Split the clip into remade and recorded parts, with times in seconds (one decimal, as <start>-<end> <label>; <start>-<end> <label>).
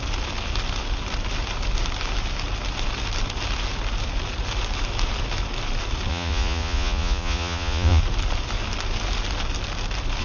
0.0-6.1 recorded; 6.1-8.0 remade; 8.0-10.2 recorded